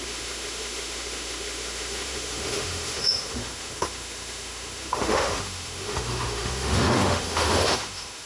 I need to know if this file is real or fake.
fake